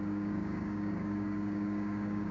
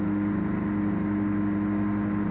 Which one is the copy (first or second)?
first